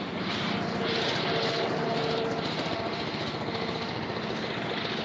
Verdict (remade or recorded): recorded